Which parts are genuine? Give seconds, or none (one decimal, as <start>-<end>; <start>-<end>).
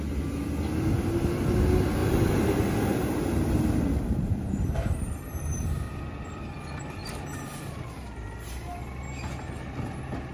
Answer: 0.0-2.0; 2.5-2.9; 5.6-7.0; 8.8-10.3